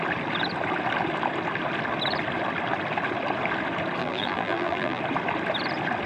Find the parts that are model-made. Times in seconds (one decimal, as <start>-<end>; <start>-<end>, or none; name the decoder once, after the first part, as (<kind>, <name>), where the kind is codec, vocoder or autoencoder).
4.0-5.0 (vocoder, BigVGAN v2)